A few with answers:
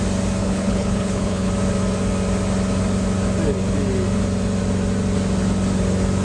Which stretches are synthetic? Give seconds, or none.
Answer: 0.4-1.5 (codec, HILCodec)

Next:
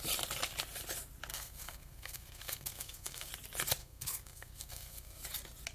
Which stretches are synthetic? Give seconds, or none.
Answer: 1.3-3.3 (codec, SNAC); 3.8-5.2

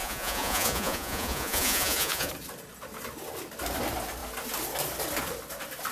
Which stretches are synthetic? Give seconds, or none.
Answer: 0.0-2.3 (vocoder, Vocos)

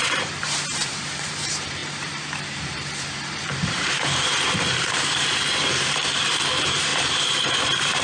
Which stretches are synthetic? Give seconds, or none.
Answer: 0.0-8.0 (vocoder, BigVGAN v2)

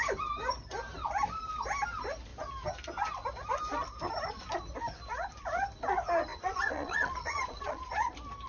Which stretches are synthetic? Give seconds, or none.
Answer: 6.3-8.1 (vocoder, Vocos)

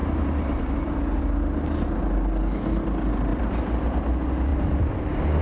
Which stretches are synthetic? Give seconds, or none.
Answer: 0.0-1.2 (vocoder, BigVGAN v2); 3.3-4.0; 4.5-5.4

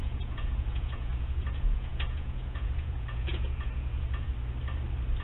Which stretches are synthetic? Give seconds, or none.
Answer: 0.0-4.3 (vocoder, Vocos)